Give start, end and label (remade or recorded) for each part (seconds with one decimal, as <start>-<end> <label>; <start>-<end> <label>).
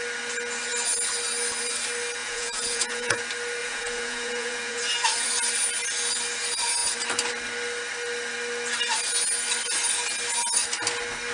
0.0-2.2 recorded; 2.2-3.2 remade; 3.2-3.6 recorded; 3.6-4.8 remade; 4.8-11.3 recorded